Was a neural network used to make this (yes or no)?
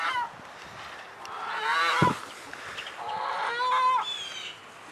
no